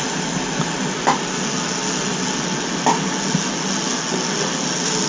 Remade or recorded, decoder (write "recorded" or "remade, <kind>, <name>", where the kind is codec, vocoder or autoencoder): recorded